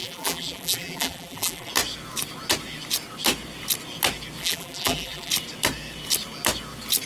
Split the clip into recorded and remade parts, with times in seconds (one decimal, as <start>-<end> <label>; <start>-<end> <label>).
0.0-1.7 remade; 1.7-4.4 recorded; 4.4-5.3 remade; 5.3-7.1 recorded